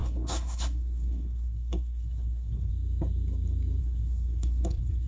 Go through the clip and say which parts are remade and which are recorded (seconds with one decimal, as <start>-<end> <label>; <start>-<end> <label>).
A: 0.0-2.7 remade; 2.7-3.8 recorded; 3.8-5.1 remade